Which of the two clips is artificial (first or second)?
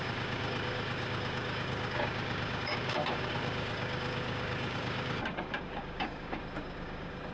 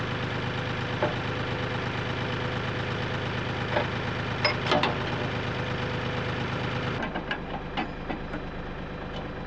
first